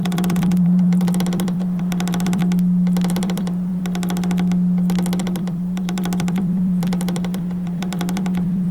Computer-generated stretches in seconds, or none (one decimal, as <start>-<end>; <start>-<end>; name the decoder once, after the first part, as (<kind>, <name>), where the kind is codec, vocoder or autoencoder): 0.0-2.4 (vocoder, BigVGAN v2); 3.1-3.8; 5.2-8.7

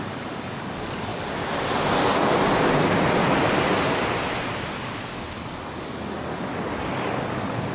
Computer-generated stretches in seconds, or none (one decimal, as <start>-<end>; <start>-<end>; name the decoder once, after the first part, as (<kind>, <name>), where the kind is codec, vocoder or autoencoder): 0.0-1.1 (codec, DAC); 5.7-7.7

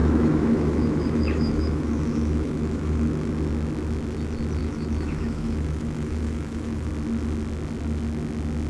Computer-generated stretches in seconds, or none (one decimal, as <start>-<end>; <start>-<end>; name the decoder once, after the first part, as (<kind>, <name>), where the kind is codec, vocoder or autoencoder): 0.0-3.3 (autoencoder, DAC-VAE); 4.6-6.9

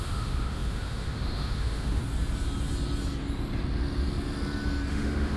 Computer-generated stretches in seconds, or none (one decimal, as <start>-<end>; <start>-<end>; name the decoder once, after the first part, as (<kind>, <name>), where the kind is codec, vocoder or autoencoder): 0.0-2.0 (autoencoder, DAC-VAE); 4.9-5.4